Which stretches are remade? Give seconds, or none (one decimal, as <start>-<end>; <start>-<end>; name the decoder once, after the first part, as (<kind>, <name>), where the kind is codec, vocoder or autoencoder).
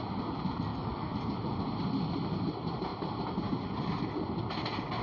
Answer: 0.7-1.4 (codec, DAC)